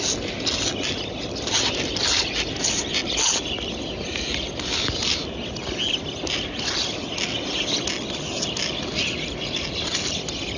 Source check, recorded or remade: recorded